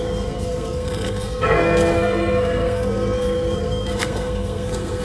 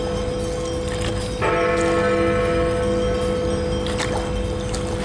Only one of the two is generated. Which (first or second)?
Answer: first